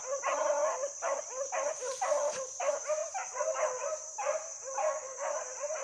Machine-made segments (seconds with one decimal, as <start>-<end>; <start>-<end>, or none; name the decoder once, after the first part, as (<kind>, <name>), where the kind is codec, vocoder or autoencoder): 4.8-5.3 (codec, SNAC)